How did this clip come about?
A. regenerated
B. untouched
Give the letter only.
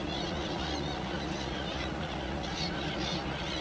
A